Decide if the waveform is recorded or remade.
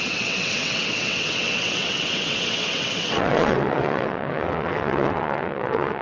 remade